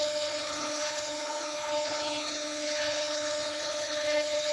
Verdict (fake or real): fake